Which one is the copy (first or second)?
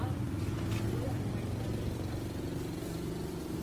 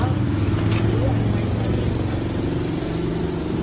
first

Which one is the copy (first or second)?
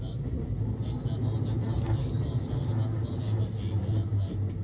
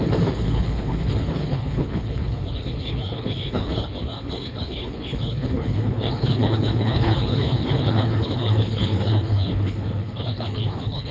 second